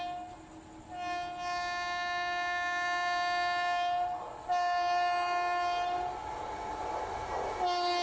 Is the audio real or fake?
real